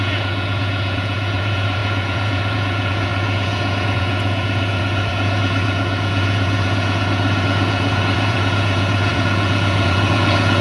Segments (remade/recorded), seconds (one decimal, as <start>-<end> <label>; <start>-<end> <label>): 0.0-10.6 remade